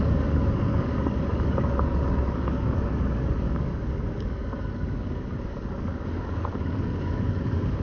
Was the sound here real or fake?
fake